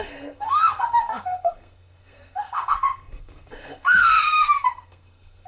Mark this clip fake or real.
fake